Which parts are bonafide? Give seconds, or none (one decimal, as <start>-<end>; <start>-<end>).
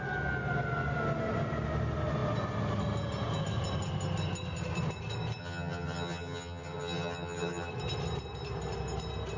0.0-5.4; 7.7-9.4